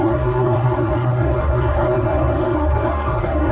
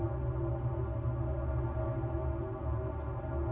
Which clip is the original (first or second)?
second